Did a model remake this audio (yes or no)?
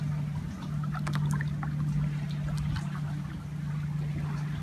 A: no